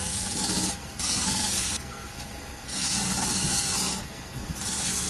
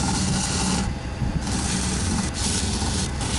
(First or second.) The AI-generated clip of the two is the first